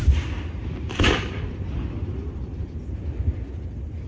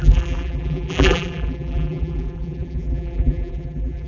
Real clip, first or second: first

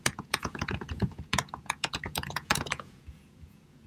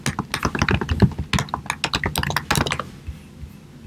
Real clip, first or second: second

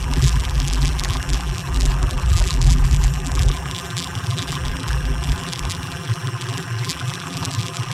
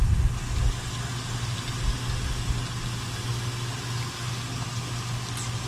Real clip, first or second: second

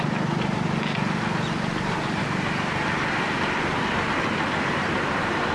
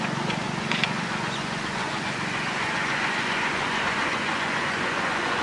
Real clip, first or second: first